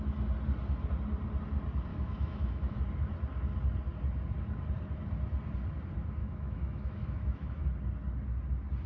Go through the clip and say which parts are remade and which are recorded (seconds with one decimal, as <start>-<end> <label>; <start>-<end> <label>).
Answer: 0.0-1.9 recorded; 1.9-2.8 remade; 2.8-6.2 recorded; 6.2-7.6 remade; 7.6-8.9 recorded